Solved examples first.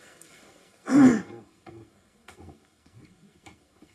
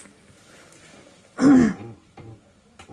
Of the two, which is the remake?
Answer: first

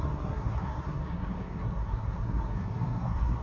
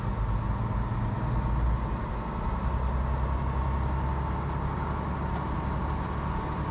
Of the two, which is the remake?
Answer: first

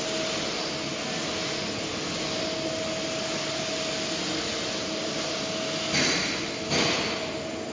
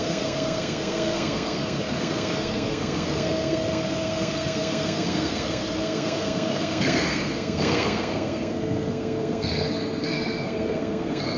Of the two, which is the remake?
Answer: second